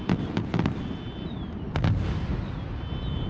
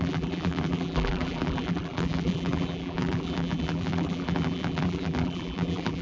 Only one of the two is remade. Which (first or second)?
second